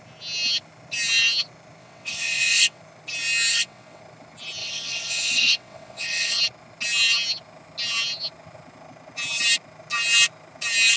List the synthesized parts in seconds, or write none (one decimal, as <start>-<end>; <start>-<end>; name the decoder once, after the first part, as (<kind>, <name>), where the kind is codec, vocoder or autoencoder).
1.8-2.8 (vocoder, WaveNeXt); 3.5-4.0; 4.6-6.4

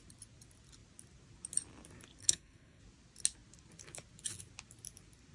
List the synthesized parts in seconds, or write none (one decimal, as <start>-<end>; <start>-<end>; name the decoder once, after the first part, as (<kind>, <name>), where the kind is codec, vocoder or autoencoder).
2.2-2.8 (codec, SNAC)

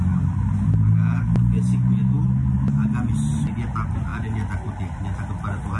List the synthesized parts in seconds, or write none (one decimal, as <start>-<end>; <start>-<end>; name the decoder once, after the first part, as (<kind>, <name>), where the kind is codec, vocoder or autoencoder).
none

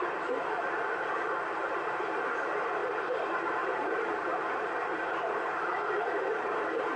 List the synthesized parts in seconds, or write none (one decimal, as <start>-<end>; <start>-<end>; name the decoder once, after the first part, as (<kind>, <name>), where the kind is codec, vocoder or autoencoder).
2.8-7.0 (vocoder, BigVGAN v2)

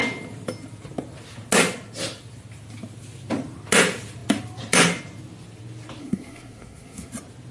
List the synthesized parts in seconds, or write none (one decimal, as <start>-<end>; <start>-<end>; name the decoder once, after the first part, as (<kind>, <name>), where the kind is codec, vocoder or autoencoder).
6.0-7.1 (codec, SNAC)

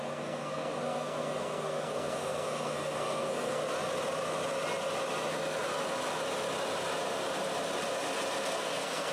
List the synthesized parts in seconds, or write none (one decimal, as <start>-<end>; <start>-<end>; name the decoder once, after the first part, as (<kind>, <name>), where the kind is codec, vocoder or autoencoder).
0.0-3.6 (codec, SNAC); 8.6-9.1

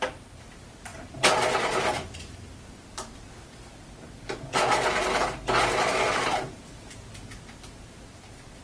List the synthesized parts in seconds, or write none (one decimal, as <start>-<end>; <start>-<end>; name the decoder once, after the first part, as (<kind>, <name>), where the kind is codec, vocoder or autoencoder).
0.9-2.4 (vocoder, BigVGAN v2)